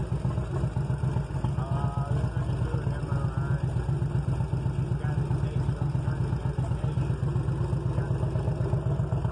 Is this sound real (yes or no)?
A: yes